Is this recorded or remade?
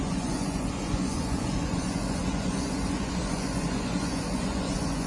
remade